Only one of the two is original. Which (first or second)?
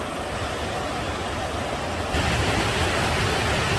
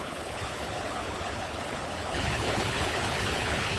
first